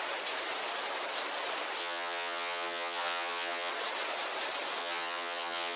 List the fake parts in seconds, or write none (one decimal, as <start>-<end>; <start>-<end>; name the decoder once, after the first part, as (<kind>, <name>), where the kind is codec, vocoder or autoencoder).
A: 1.8-3.7 (vocoder, HiFi-GAN); 4.8-5.8